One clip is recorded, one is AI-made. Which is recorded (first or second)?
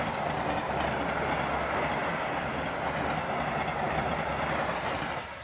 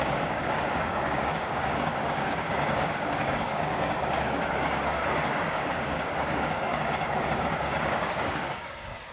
first